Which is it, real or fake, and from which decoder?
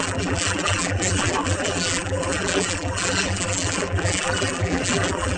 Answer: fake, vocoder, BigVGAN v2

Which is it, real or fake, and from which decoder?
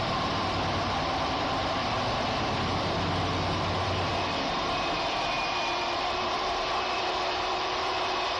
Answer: fake, vocoder, BigVGAN v2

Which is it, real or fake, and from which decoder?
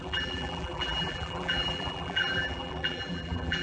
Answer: fake, vocoder, BigVGAN v2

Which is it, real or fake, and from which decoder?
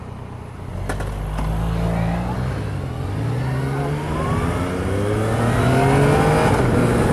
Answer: real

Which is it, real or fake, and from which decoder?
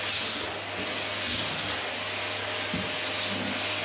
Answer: real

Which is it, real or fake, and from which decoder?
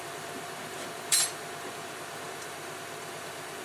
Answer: fake, vocoder, BigVGAN v2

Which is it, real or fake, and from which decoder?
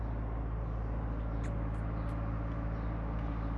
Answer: real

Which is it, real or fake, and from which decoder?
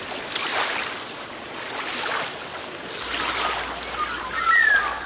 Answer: real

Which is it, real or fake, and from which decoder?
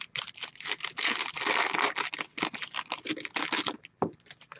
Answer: real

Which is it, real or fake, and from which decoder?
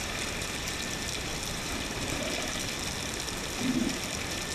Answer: fake, vocoder, BigVGAN v2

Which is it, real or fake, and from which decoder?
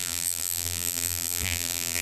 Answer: fake, vocoder, BigVGAN v2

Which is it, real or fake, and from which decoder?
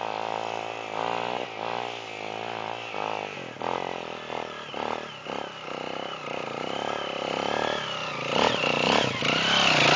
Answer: real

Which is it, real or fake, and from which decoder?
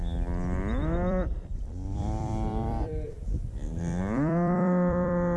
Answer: fake, vocoder, BigVGAN v2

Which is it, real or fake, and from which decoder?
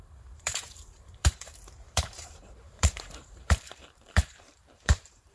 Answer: fake, vocoder, BigVGAN v2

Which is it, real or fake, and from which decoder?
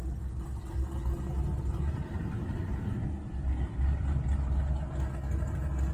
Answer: real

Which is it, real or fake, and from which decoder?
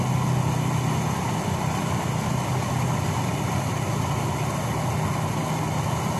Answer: real